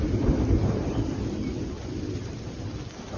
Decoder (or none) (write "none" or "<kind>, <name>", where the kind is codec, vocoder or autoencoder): none